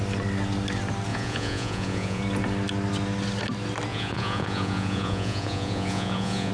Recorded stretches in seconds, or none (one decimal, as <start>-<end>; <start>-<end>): 0.0-1.1; 2.2-3.9